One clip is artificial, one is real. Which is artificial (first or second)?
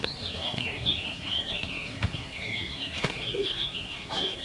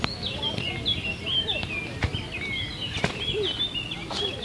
first